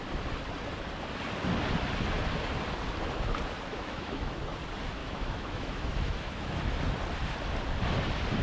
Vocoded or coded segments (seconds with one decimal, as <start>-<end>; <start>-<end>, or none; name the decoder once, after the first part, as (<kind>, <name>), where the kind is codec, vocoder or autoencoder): 3.7-4.4 (autoencoder, DAC-VAE); 5.0-6.6